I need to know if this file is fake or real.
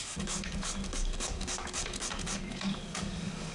fake